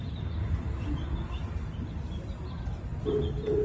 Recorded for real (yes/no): yes